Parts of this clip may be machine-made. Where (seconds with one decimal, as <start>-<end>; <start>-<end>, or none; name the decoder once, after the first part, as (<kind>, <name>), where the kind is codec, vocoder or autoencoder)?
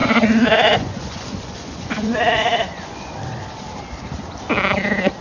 0.0-3.1 (vocoder, Vocos)